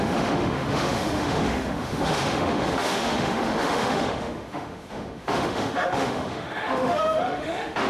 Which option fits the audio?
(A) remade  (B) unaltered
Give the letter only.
A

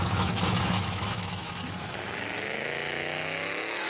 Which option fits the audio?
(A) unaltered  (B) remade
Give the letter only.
B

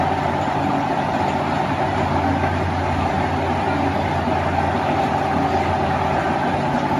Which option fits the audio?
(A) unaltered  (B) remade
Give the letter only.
A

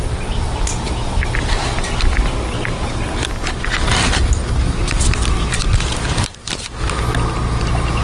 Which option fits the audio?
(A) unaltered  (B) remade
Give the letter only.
A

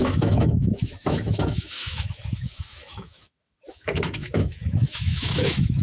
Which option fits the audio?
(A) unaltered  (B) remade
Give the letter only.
B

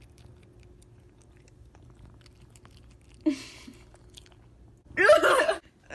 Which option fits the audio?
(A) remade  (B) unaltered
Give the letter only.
B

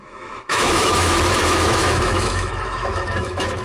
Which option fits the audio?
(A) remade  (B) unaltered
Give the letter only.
A